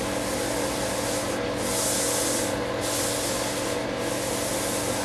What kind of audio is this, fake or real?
real